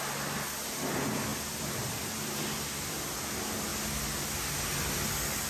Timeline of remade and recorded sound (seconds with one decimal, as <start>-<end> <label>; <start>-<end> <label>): 0.0-1.3 recorded; 1.3-3.0 remade; 3.0-5.5 recorded